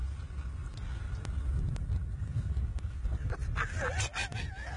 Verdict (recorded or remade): recorded